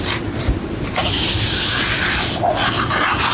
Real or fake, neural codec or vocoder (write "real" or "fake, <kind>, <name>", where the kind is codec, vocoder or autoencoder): real